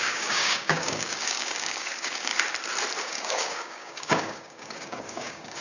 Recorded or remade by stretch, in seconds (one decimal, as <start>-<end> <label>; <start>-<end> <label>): 0.0-2.3 remade; 2.3-3.0 recorded; 3.0-5.6 remade